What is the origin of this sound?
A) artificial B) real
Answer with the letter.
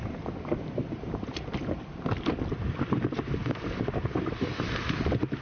B